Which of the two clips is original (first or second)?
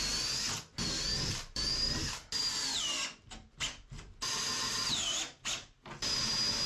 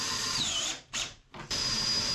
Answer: first